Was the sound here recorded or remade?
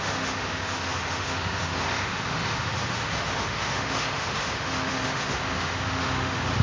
remade